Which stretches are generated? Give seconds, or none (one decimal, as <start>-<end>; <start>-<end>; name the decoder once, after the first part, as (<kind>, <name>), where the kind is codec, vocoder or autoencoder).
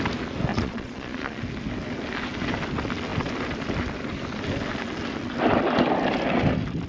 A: 0.5-1.4 (vocoder, Vocos)